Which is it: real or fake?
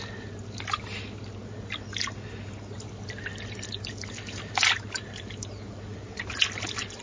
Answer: real